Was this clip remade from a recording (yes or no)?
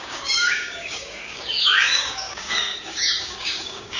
yes